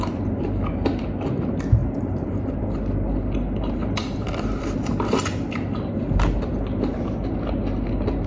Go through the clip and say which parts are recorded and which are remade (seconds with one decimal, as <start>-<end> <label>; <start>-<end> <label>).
0.0-1.8 recorded; 1.8-2.6 remade; 2.6-3.8 recorded; 3.8-5.1 remade; 5.1-8.3 recorded